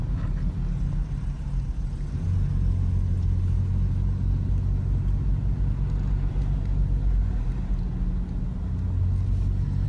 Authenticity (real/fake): real